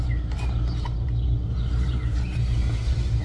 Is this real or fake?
fake